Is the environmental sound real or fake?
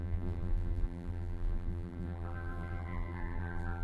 fake